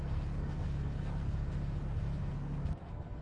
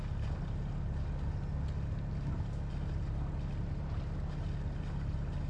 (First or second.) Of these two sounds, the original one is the second